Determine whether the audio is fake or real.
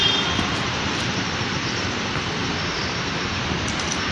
fake